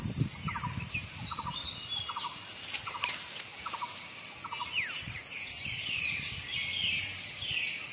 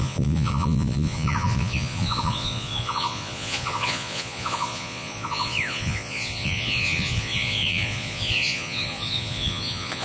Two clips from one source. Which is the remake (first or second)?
second